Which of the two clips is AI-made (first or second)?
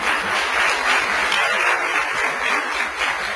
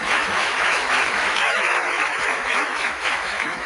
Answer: second